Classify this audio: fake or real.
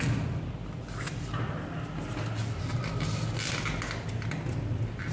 real